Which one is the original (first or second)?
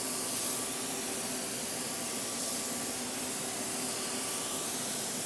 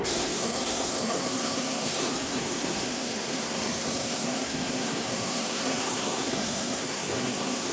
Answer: first